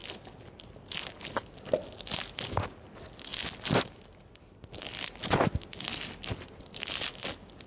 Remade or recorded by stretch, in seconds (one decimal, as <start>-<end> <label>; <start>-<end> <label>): 0.0-7.7 recorded